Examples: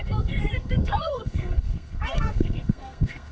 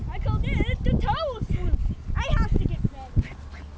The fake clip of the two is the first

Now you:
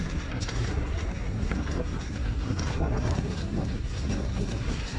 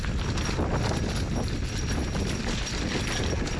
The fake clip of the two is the first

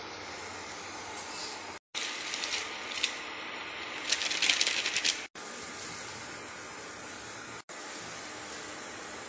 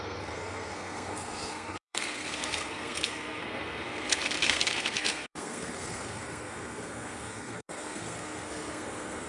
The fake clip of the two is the second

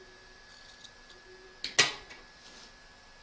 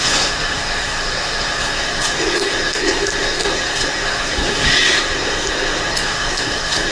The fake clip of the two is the second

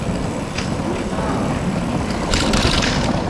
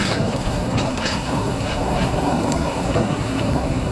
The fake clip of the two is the second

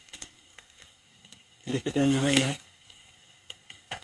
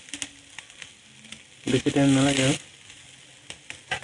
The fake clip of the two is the first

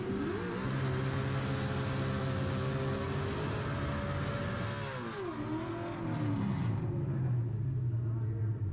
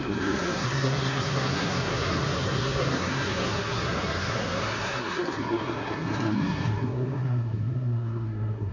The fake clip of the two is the second